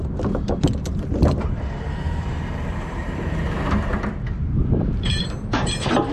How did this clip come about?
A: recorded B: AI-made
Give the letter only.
B